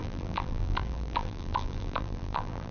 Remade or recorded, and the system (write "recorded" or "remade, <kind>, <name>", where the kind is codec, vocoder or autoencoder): remade, vocoder, BigVGAN v2